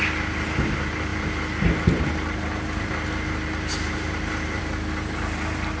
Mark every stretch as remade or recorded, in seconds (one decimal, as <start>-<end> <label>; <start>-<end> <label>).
0.0-5.8 recorded